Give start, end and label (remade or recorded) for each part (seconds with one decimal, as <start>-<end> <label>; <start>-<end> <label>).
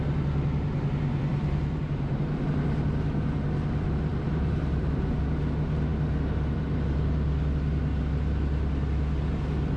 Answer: 0.0-1.3 recorded; 1.3-2.4 remade; 2.4-4.1 recorded; 4.1-5.2 remade; 5.2-9.8 recorded